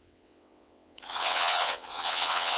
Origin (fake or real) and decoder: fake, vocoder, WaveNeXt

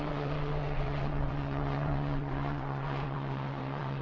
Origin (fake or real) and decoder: fake, vocoder, WaveNeXt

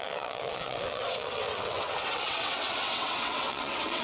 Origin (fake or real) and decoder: fake, vocoder, WaveNeXt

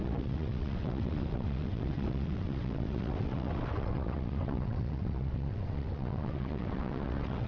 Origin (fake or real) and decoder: fake, vocoder, WaveNeXt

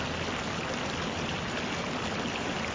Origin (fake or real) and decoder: real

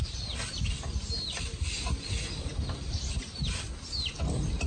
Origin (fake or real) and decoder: real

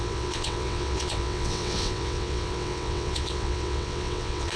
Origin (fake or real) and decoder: fake, vocoder, WaveNeXt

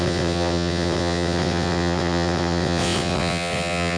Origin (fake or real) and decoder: fake, vocoder, WaveNeXt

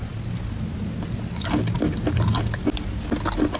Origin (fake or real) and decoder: real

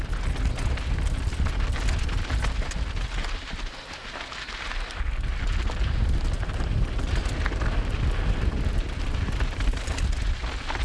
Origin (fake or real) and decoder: real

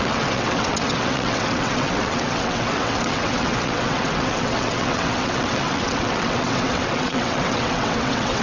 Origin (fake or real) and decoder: fake, vocoder, WaveNeXt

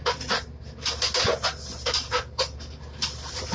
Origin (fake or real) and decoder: real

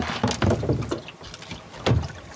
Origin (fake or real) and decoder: real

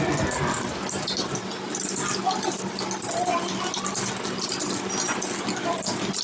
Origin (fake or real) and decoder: real